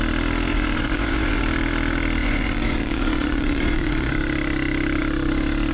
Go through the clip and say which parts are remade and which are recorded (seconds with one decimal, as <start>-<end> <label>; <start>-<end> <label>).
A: 0.0-0.5 recorded; 0.5-1.4 remade; 1.4-2.2 recorded; 2.2-4.1 remade; 4.1-5.7 recorded